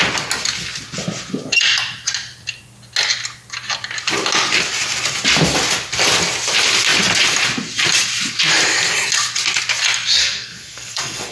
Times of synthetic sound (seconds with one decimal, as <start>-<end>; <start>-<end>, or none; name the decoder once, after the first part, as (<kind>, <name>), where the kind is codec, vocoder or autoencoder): 10.2-11.3 (codec, SNAC)